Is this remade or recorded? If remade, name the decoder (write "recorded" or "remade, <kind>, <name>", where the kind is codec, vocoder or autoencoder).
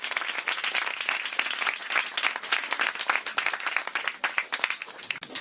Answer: recorded